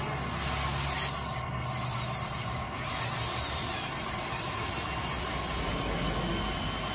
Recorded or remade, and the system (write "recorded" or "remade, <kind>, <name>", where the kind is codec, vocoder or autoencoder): recorded